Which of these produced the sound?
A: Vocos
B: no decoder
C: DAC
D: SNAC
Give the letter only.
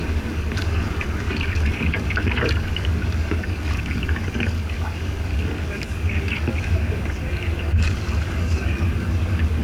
C